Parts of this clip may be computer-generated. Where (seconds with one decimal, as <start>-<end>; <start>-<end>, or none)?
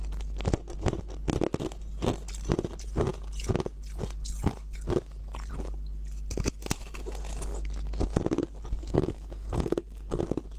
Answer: 8.8-10.2